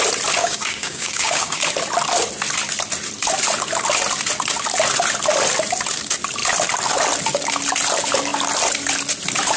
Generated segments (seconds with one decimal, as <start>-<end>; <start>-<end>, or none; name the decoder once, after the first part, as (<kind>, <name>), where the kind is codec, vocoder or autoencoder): 0.4-1.6 (codec, DAC)